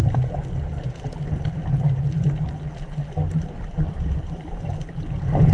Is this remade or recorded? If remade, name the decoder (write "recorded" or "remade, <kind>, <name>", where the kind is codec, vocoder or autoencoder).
recorded